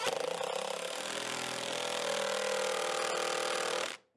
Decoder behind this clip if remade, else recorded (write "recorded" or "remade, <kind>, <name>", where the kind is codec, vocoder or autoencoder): recorded